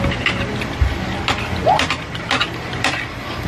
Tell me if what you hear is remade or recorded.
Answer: recorded